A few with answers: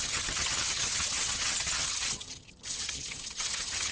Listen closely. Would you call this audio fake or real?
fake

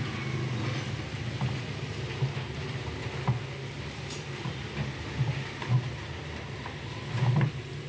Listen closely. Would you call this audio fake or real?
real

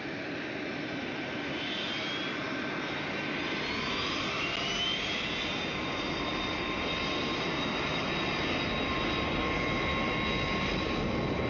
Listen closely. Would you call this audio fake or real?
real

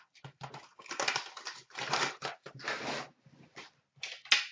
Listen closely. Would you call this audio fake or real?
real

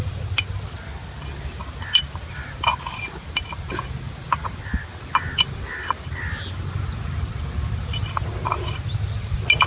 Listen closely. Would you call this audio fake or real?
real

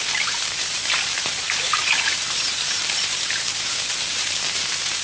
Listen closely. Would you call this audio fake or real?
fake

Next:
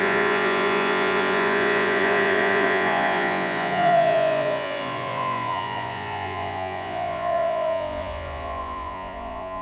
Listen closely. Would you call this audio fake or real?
fake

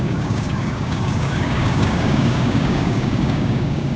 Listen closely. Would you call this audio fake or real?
fake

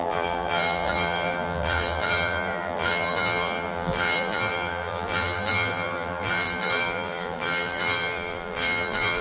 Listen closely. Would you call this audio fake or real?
fake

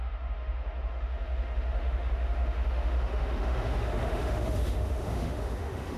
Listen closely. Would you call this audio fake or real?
fake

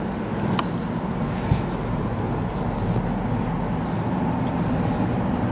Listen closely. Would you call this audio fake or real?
real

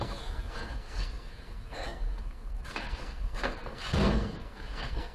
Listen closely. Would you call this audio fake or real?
fake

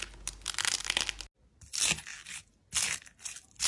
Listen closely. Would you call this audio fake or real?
real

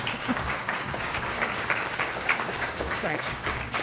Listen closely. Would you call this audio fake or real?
fake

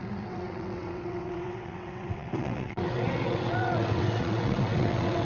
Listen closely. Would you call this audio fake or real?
fake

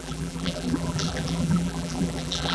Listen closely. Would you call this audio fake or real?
fake